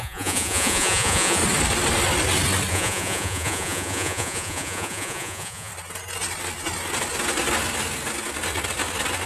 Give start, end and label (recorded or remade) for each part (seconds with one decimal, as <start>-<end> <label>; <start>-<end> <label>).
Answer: 0.0-1.4 remade; 1.4-2.7 recorded; 2.7-5.7 remade; 5.7-9.3 recorded